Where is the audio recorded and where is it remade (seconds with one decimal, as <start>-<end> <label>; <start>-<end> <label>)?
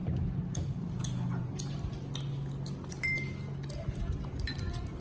0.0-5.0 recorded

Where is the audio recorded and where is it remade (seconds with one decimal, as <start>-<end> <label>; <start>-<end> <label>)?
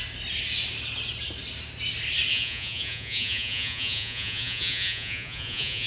0.0-2.3 recorded; 2.3-5.9 remade